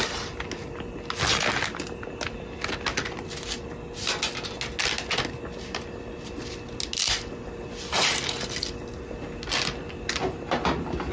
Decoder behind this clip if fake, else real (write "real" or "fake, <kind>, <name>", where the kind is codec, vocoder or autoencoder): real